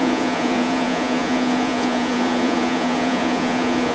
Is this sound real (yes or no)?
no